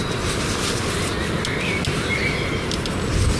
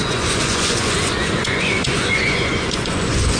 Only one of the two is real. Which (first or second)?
first